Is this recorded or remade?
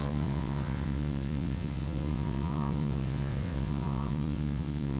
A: remade